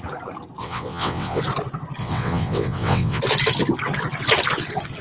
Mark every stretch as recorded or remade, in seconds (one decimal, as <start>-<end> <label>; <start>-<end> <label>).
0.0-0.6 recorded; 0.6-1.4 remade; 1.4-2.0 recorded; 2.0-3.2 remade; 3.2-5.0 recorded